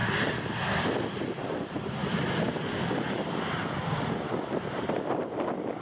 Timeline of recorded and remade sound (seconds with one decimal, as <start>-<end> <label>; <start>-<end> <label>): 0.0-2.0 recorded; 2.0-2.7 remade; 2.7-3.8 recorded; 3.8-4.6 remade; 4.6-5.8 recorded